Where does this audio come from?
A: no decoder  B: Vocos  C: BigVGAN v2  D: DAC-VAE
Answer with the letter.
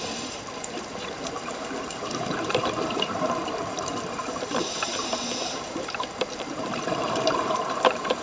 C